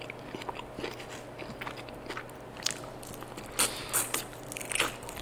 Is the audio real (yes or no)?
yes